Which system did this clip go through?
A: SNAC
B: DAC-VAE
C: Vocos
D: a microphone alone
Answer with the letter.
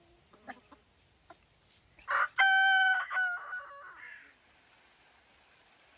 D